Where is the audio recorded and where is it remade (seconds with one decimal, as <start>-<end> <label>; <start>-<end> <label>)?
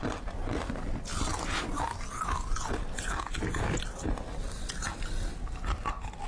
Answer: 0.0-6.3 recorded